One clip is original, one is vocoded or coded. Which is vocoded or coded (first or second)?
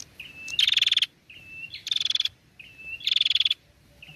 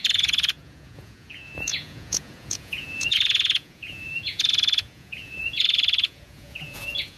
second